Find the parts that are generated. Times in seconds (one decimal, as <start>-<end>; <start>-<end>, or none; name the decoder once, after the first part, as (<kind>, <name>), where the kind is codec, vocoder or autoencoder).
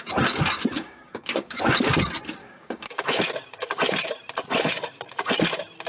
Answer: 0.7-1.6 (codec, DAC); 2.4-3.2